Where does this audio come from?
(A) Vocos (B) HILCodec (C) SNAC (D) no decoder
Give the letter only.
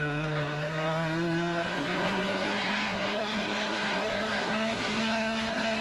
C